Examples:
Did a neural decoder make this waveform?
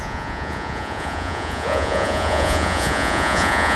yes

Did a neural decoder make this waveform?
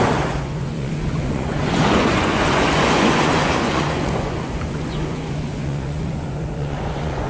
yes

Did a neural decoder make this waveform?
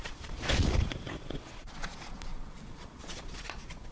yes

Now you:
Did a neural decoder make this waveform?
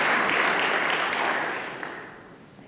no